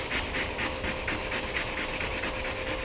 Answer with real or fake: real